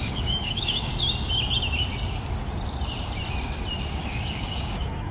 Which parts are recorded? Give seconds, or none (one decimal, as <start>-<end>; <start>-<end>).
0.9-4.0